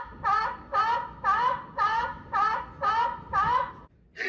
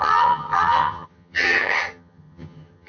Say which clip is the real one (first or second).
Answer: first